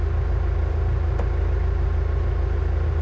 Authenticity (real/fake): real